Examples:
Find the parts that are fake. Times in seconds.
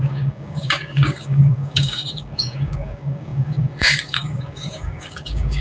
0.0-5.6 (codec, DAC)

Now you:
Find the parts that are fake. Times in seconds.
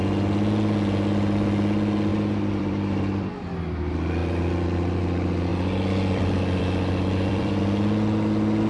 2.1-3.3 (vocoder, BigVGAN v2); 4.2-5.0; 5.5-7.6